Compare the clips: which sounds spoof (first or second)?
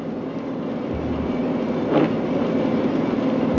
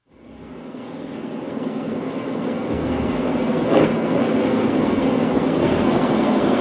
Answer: second